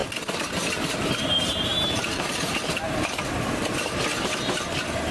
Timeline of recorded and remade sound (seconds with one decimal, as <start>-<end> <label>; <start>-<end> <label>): 0.0-1.2 recorded; 1.2-4.1 remade; 4.1-5.1 recorded